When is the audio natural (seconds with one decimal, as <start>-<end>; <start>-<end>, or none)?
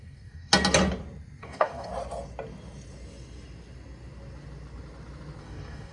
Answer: 0.5-1.4; 1.9-5.4